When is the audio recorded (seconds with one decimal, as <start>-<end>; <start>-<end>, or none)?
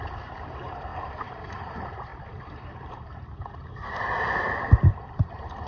none